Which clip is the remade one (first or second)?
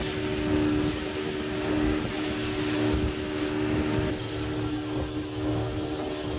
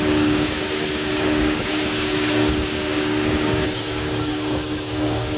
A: second